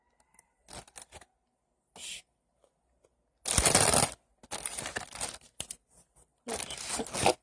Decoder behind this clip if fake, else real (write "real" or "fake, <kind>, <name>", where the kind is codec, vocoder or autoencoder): real